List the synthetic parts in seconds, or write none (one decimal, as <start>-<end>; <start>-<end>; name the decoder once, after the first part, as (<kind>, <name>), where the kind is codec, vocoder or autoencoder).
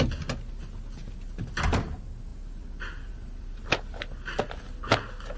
none